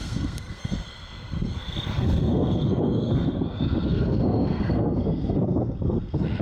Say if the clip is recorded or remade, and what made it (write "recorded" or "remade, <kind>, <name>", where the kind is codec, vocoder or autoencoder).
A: remade, codec, SNAC